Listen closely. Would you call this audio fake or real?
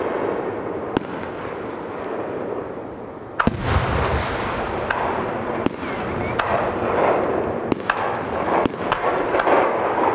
real